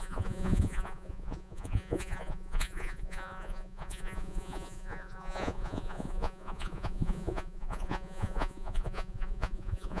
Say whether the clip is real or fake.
fake